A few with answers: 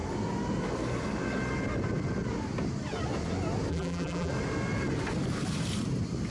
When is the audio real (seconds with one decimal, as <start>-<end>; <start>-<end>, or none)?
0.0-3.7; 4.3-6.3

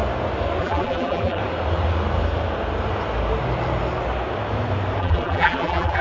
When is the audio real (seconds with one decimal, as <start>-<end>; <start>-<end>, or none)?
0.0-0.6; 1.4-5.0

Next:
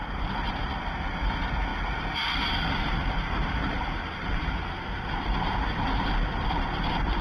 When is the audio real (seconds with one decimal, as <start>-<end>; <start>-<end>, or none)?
none

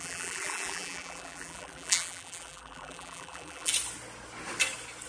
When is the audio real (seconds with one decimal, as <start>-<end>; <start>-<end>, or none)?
3.7-5.1

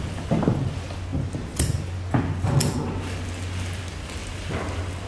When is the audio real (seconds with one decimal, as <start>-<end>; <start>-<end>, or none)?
0.0-5.1